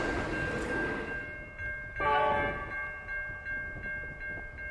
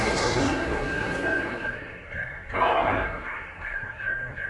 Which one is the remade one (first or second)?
second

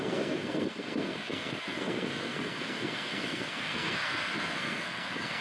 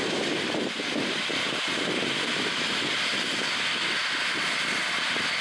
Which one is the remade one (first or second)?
first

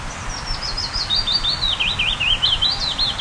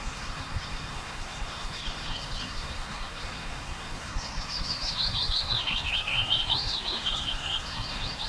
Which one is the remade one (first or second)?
second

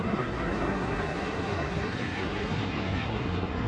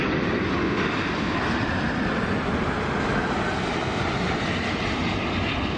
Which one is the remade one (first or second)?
first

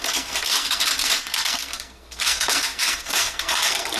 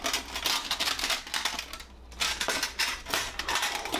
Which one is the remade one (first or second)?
first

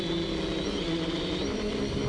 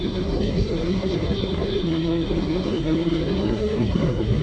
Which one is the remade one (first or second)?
second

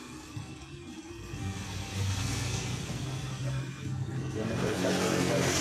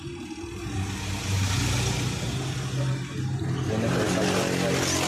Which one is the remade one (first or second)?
first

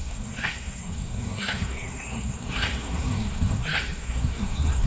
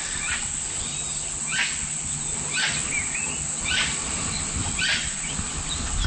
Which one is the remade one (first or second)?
first